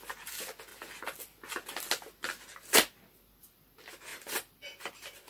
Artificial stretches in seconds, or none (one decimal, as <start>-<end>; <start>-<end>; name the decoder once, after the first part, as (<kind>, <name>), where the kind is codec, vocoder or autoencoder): 4.1-5.3 (vocoder, BigVGAN v2)